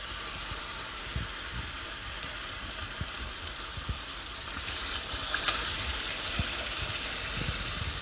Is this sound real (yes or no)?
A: no